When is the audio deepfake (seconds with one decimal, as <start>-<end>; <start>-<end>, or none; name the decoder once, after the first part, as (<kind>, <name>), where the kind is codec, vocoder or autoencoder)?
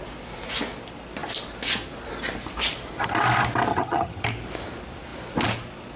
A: 3.7-4.2 (vocoder, HiFi-GAN)